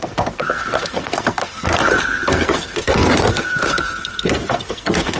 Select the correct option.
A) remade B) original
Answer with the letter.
A